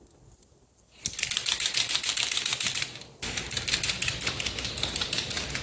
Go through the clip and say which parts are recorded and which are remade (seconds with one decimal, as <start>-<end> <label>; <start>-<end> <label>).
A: 0.0-5.6 recorded